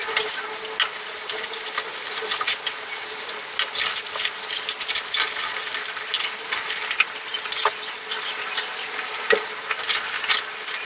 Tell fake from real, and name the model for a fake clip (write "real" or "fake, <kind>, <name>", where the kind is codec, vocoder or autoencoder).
real